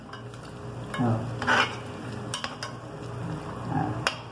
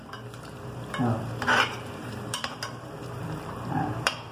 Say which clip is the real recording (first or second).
first